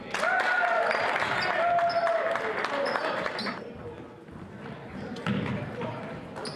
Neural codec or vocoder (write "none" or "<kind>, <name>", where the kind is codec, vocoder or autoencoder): none